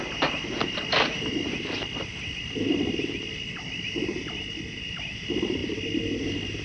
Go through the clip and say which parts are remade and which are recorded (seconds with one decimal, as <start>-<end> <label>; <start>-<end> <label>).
0.0-6.6 recorded